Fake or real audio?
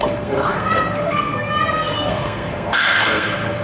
fake